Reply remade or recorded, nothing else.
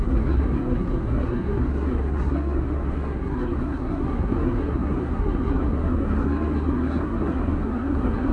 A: remade